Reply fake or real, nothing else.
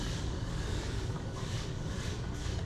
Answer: fake